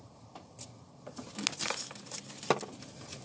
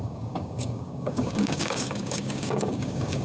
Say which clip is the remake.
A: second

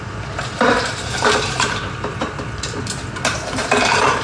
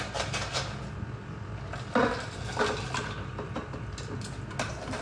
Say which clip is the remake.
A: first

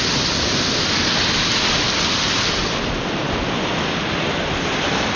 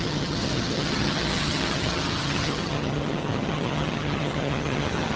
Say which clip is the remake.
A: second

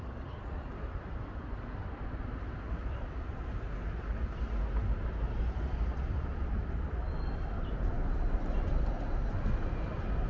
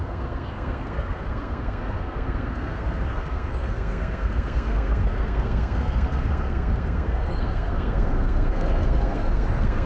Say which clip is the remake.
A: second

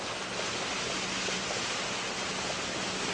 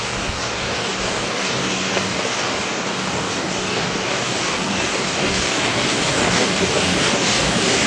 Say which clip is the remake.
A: second